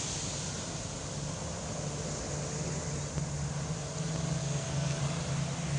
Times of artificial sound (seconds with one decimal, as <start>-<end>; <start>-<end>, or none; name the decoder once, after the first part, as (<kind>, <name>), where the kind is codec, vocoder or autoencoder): 4.4-5.0 (codec, SNAC)